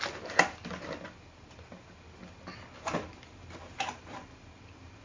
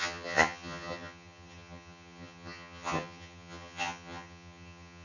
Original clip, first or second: first